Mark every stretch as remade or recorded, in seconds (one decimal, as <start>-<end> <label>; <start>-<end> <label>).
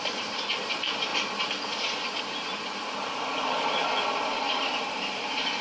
0.0-1.1 remade; 1.1-2.2 recorded; 2.2-5.6 remade